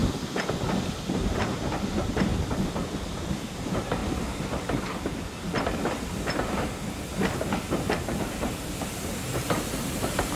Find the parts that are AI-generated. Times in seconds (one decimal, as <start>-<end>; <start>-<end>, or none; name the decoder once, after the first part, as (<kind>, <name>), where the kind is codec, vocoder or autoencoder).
1.1-2.3 (vocoder, BigVGAN v2); 2.9-4.0; 7.7-10.4